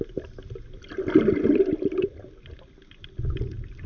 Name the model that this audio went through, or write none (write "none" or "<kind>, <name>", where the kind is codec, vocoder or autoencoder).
vocoder, BigVGAN v2